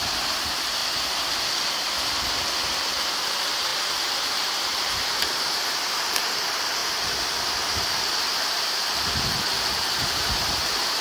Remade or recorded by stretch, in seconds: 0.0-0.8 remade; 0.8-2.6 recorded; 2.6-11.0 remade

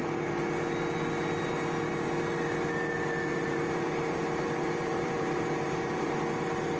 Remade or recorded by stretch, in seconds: 0.0-3.3 recorded; 3.3-6.2 remade; 6.2-6.8 recorded

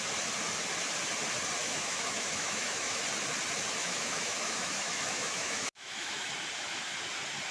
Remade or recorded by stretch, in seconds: 0.0-1.6 recorded; 1.6-3.0 remade; 3.0-3.8 recorded; 3.8-6.3 remade; 6.3-7.5 recorded

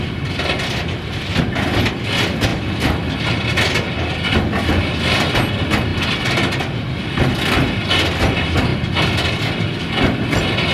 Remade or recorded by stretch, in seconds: 0.0-10.7 recorded

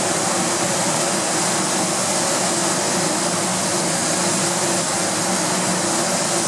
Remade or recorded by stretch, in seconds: 0.0-6.5 recorded

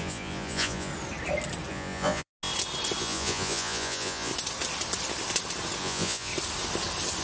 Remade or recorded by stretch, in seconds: 0.0-0.9 remade; 0.9-1.7 recorded; 1.7-2.3 remade; 2.3-3.0 recorded; 3.0-4.3 remade; 4.3-5.8 recorded; 5.8-6.3 remade; 6.3-7.2 recorded

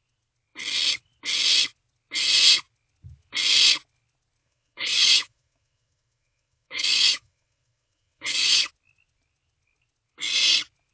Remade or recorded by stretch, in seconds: 0.0-4.4 recorded; 4.4-8.7 remade; 8.7-10.9 recorded